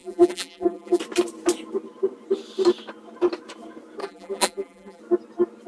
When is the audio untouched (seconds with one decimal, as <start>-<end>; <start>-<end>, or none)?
1.0-4.0; 5.0-5.7